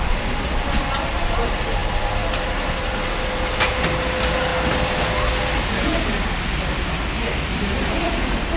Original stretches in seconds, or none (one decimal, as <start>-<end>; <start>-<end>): 0.0-8.6